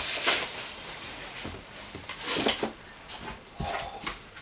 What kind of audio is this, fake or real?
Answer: real